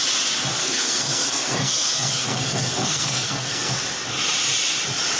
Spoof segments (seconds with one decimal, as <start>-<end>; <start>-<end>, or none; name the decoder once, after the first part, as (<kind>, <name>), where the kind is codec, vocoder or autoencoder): 0.6-3.7 (codec, SNAC)